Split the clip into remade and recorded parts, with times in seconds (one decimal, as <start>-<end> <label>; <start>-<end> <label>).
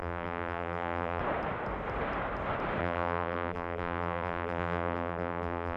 0.0-1.2 remade; 1.2-2.8 recorded; 2.8-5.8 remade